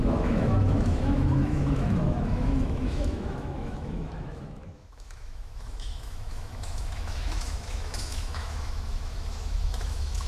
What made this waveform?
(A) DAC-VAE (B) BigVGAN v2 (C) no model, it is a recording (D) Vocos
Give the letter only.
A